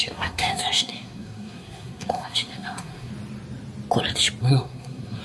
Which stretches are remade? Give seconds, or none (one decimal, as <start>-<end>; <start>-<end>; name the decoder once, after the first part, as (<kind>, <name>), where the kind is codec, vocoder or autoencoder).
0.0-3.1 (codec, SNAC); 4.4-5.2